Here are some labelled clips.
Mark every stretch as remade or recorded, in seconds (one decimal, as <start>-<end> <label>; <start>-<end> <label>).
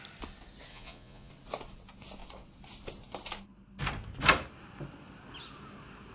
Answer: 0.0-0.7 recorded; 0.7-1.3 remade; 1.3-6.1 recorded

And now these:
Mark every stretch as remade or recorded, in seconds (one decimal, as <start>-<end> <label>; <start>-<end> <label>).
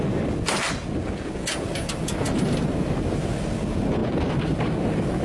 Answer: 0.0-5.2 recorded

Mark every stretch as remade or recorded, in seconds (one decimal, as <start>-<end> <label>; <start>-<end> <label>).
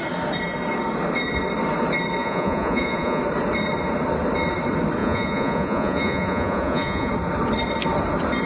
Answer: 0.0-2.2 recorded; 2.2-3.2 remade; 3.2-5.0 recorded; 5.0-7.1 remade; 7.1-8.5 recorded